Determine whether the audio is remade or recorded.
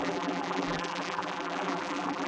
remade